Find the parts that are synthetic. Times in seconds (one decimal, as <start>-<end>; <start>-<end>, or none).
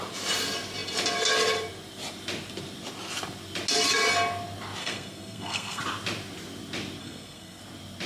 4.8-5.8; 7.0-7.6